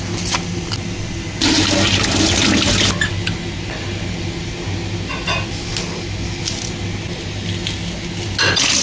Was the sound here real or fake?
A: real